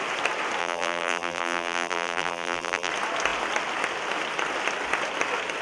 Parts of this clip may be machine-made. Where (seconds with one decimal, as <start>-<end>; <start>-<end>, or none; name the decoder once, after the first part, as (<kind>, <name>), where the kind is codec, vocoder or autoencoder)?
0.6-2.9 (vocoder, BigVGAN v2)